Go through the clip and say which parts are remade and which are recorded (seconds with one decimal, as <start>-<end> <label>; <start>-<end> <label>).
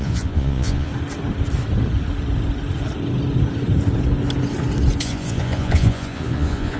0.0-0.9 remade; 0.9-5.0 recorded; 5.0-6.8 remade